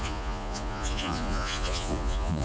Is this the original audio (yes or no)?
no